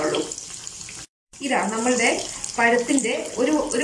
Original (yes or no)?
no